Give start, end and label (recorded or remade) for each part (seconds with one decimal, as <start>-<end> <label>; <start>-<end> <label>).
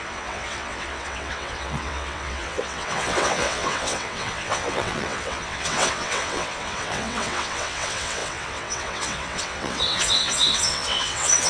0.0-11.5 remade